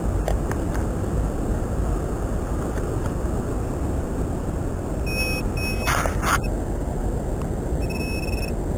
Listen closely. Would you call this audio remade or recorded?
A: recorded